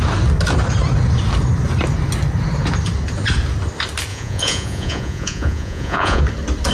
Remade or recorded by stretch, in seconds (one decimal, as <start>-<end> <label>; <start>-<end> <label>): 0.0-4.1 recorded; 4.1-6.2 remade; 6.2-6.7 recorded